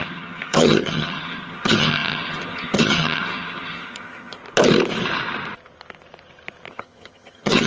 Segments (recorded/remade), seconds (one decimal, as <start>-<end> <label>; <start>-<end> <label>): 0.0-4.4 remade; 4.4-6.7 recorded; 6.7-7.7 remade